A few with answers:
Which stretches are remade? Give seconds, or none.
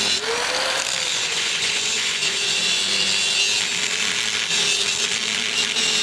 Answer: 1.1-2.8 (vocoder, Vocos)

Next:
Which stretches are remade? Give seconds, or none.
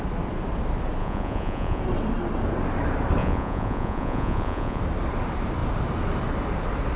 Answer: 1.0-1.8 (vocoder, Vocos); 3.2-4.8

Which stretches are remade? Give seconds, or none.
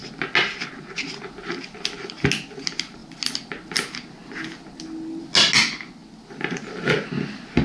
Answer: none